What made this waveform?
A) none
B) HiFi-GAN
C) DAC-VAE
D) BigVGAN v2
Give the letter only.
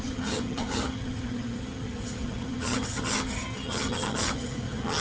B